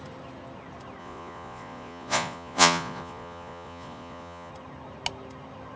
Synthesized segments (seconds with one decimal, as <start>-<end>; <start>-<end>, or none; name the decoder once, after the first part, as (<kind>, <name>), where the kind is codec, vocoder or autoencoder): 1.0-4.5 (vocoder, Vocos)